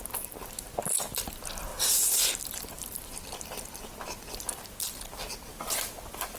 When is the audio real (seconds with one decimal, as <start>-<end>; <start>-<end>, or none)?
0.0-1.7; 3.2-6.4